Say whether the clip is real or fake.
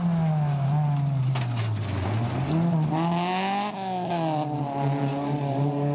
real